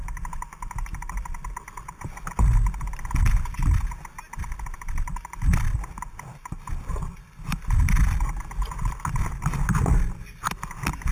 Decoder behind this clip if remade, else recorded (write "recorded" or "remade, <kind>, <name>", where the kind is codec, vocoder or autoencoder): recorded